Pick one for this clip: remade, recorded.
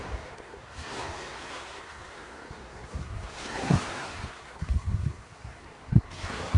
remade